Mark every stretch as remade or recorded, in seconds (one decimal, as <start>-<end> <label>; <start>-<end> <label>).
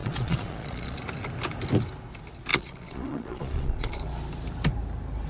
0.0-1.1 remade; 1.1-2.5 recorded; 2.5-3.9 remade; 3.9-5.3 recorded